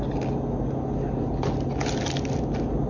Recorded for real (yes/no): yes